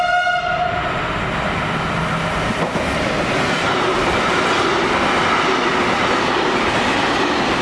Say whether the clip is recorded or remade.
recorded